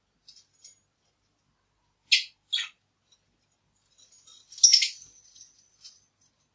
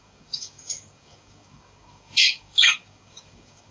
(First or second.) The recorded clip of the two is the first